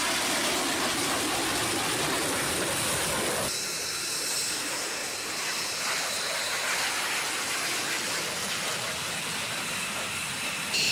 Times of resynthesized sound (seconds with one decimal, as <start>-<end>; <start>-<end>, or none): none